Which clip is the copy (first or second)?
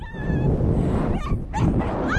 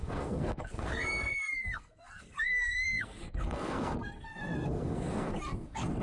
second